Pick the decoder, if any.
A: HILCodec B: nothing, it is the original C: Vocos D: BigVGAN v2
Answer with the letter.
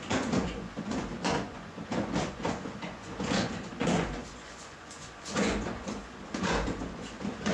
C